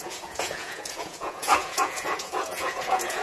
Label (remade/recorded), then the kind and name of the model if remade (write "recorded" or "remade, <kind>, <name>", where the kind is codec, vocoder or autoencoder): remade, vocoder, Vocos